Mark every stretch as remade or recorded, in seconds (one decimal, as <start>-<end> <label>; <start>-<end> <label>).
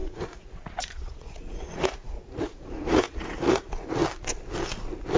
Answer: 0.0-4.0 remade; 4.0-5.2 recorded